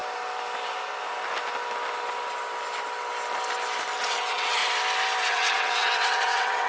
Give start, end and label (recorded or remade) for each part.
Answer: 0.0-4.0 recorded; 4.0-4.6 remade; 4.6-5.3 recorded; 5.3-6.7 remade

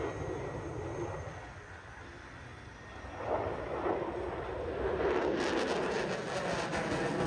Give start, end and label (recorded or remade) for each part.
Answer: 0.0-7.3 recorded